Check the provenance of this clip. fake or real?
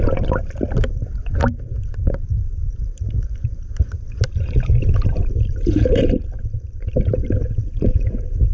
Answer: fake